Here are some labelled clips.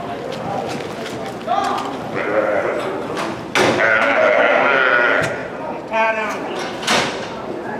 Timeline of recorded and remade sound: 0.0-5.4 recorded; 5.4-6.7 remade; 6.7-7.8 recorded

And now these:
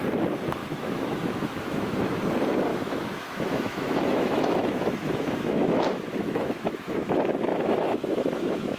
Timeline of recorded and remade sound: 0.0-0.6 recorded; 0.6-2.2 remade; 2.2-2.7 recorded; 2.7-7.1 remade; 7.1-7.5 recorded; 7.5-8.8 remade

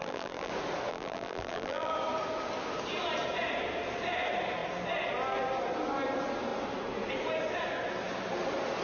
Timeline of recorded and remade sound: 0.0-0.5 remade; 0.5-0.9 recorded; 0.9-1.9 remade; 1.9-8.8 recorded

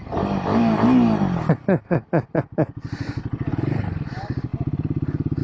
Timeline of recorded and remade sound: 0.0-5.4 recorded

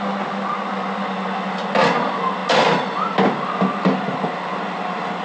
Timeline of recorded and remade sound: 0.0-5.2 recorded

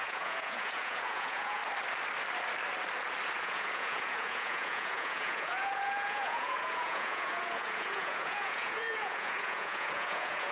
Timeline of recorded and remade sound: 0.0-1.6 remade; 1.6-3.4 recorded; 3.4-10.5 remade